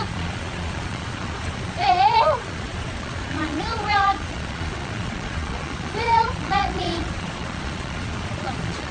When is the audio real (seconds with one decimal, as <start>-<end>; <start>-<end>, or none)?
none